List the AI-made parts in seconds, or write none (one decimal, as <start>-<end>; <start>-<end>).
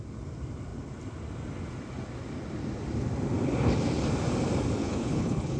4.8-5.6